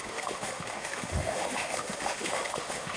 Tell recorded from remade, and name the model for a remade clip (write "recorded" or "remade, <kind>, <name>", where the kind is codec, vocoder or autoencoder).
remade, autoencoder, DAC-VAE